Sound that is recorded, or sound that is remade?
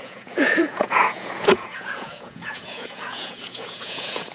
remade